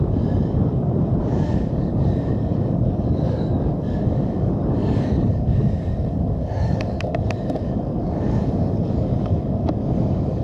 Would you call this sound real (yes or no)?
no